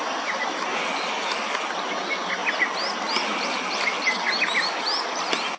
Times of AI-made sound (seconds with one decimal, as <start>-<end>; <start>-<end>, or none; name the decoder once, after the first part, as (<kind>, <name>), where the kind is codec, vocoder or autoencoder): none